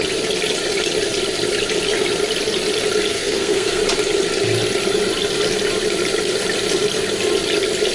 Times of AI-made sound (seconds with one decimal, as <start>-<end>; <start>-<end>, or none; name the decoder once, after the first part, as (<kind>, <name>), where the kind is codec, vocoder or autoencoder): 3.1-3.8 (codec, SNAC)